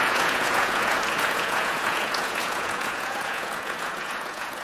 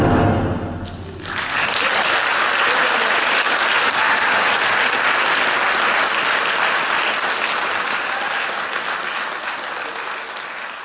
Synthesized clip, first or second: first